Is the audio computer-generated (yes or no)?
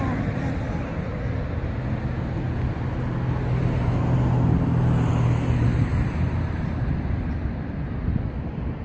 no